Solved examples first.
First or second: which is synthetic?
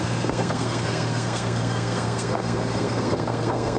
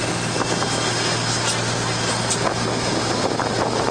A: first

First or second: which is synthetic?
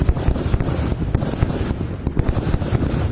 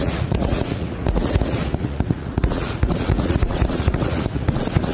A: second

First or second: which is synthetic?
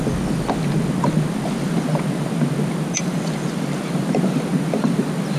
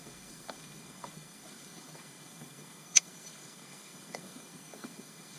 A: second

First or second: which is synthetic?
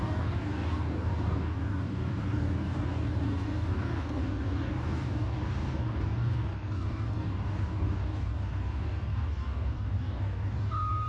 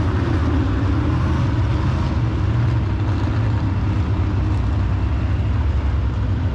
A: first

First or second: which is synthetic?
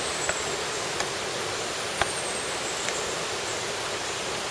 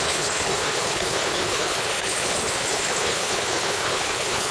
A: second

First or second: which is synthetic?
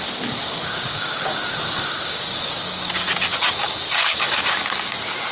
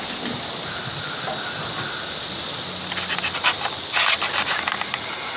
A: first